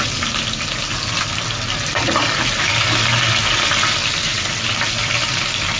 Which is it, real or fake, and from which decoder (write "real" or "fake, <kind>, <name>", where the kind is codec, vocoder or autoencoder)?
real